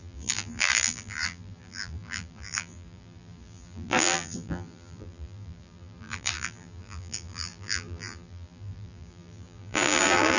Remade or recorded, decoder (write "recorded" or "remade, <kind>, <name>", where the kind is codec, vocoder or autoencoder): remade, vocoder, BigVGAN v2